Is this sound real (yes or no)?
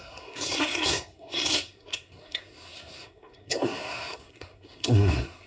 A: no